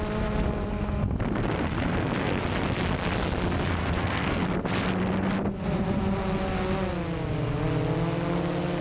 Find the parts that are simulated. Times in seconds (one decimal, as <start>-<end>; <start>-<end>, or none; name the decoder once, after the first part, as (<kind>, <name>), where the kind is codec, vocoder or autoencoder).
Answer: 3.8-4.4 (codec, SNAC)